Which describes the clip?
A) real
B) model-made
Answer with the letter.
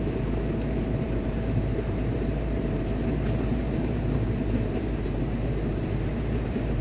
B